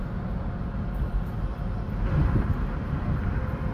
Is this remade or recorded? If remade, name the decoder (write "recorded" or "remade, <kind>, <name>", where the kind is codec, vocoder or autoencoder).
recorded